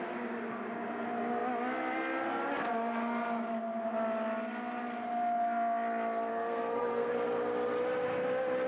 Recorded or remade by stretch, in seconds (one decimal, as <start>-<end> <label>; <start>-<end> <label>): 0.0-6.3 recorded; 6.3-7.1 remade; 7.1-8.7 recorded